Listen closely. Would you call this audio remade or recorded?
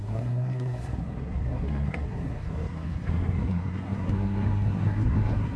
remade